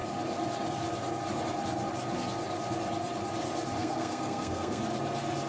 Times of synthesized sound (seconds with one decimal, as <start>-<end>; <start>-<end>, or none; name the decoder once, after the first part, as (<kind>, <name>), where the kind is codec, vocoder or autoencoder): 3.8-4.8 (codec, SNAC)